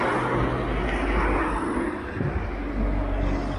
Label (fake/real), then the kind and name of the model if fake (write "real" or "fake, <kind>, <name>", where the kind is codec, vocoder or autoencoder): real